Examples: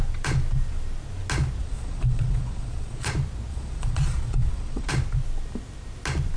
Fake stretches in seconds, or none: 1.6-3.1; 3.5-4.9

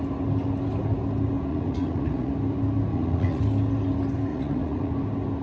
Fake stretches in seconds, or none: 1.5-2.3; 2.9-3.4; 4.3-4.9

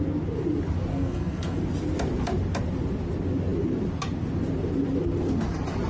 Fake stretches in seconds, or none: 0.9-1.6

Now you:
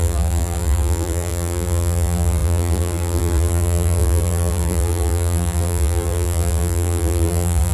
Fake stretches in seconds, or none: 0.0-7.7

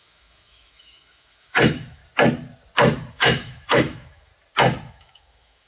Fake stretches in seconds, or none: 0.0-2.0; 3.1-4.3; 4.9-5.7